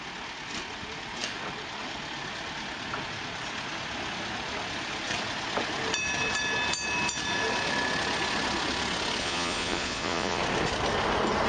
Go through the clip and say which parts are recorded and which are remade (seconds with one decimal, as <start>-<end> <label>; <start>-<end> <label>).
0.0-9.2 recorded; 9.2-10.4 remade; 10.4-11.5 recorded